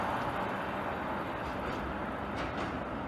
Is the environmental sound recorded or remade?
recorded